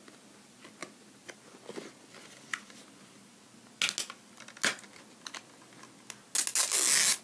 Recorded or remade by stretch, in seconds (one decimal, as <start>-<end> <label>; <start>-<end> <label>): 0.0-7.2 recorded